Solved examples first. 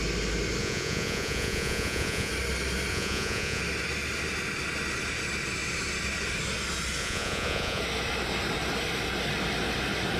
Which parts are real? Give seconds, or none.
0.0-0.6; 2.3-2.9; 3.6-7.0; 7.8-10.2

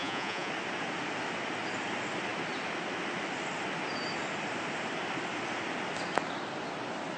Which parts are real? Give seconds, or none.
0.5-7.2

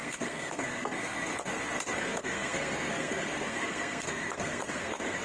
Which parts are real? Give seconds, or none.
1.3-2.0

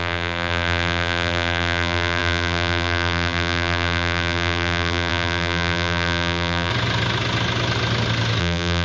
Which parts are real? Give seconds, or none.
6.7-8.4